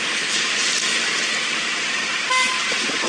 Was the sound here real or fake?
real